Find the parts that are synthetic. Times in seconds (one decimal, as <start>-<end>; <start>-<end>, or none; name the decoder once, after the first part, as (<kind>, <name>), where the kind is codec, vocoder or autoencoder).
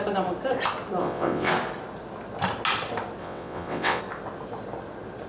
1.0-1.5 (vocoder, WaveNeXt); 3.2-4.0